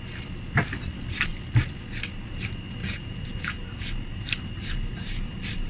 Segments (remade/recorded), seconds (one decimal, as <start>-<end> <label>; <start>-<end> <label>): 0.0-2.8 recorded; 2.8-5.7 remade